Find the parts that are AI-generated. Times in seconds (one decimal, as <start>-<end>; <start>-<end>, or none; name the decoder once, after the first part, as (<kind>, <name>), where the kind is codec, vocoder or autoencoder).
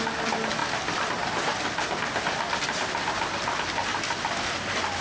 none